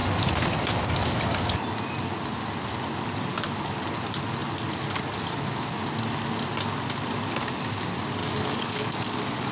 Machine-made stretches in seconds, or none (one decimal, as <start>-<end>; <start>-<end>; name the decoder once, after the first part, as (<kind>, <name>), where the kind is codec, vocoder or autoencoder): 3.3-3.9 (codec, DAC); 8.2-9.5